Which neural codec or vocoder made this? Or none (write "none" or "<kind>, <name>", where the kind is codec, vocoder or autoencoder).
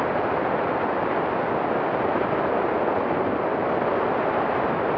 none